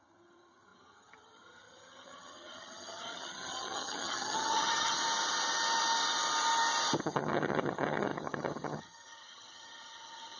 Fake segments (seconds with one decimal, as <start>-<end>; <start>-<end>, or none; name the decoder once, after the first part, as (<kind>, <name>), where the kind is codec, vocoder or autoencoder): 0.0-5.0 (vocoder, HiFi-GAN); 7.0-10.4